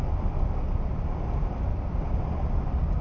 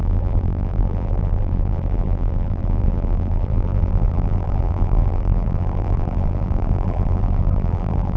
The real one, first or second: first